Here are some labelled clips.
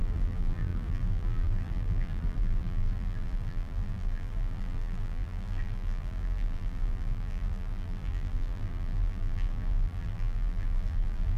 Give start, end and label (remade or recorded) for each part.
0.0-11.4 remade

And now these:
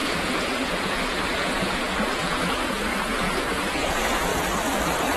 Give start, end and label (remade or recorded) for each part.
0.0-4.3 remade; 4.3-5.2 recorded

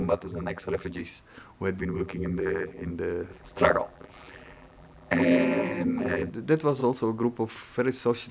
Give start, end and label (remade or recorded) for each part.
0.0-1.0 remade; 1.0-1.8 recorded; 1.8-2.9 remade; 2.9-3.3 recorded; 3.3-6.3 remade; 6.3-8.3 recorded

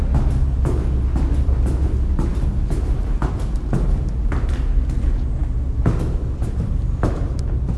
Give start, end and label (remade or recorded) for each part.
0.0-7.8 recorded

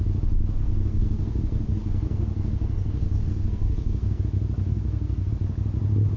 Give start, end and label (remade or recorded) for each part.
0.0-0.5 recorded; 0.5-4.2 remade; 4.2-4.7 recorded; 4.7-5.3 remade; 5.3-6.2 recorded

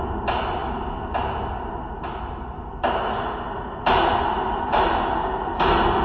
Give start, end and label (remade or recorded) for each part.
0.0-6.0 recorded

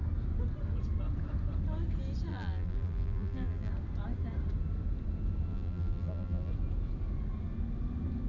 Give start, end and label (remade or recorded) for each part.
0.0-2.3 recorded; 2.3-3.7 remade; 3.7-5.5 recorded; 5.5-6.5 remade; 6.5-8.3 recorded

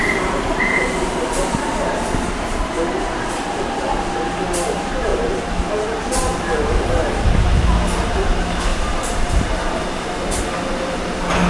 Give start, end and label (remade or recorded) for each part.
0.0-1.7 remade; 1.7-6.3 recorded; 6.3-7.3 remade; 7.3-8.7 recorded; 8.7-10.4 remade; 10.4-11.5 recorded